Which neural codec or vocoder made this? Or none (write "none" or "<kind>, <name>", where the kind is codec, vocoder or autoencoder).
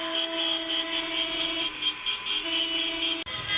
none